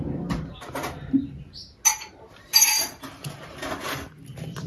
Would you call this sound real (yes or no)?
yes